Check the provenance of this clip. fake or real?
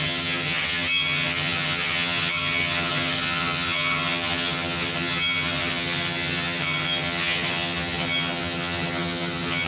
fake